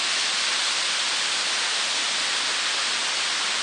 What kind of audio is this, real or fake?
real